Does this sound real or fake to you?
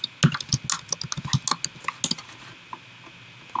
real